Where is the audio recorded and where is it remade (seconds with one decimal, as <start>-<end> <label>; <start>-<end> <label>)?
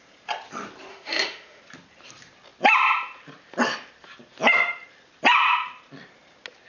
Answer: 0.0-0.9 recorded; 0.9-1.6 remade; 1.6-6.7 recorded